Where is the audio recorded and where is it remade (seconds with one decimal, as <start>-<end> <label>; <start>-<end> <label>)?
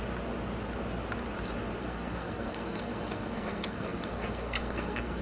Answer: 0.0-1.8 recorded; 1.8-5.2 remade